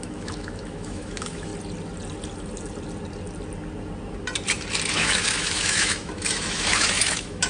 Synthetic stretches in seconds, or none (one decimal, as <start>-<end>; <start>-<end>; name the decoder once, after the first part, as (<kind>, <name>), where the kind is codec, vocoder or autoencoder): 0.0-1.5 (autoencoder, DAC-VAE); 4.9-7.5